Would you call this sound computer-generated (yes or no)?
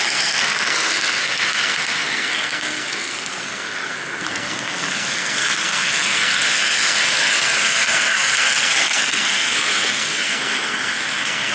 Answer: yes